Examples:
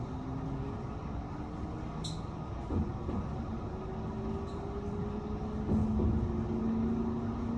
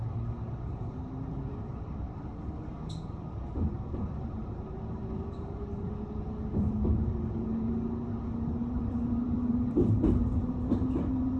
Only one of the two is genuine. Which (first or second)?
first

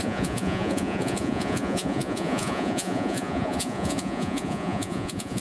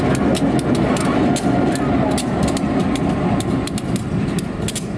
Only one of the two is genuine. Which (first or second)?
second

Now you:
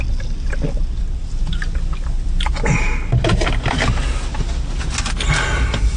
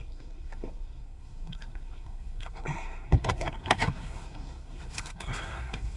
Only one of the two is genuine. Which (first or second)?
first